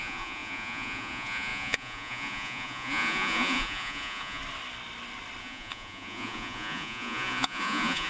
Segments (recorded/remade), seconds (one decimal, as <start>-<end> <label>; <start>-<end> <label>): 0.0-4.4 remade; 4.4-5.4 recorded; 5.4-8.1 remade